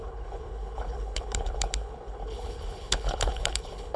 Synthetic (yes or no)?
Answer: yes